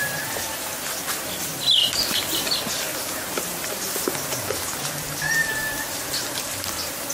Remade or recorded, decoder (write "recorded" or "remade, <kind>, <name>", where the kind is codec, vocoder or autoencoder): recorded